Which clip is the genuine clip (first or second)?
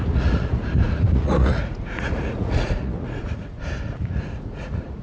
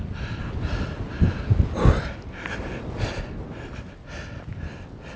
second